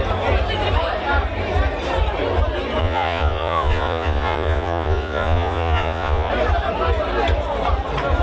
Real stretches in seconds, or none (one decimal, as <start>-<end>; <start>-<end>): 0.0-2.8; 6.3-8.2